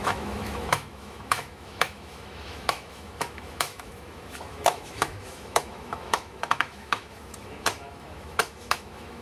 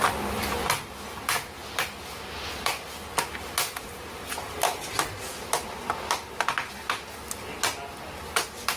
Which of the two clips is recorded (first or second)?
second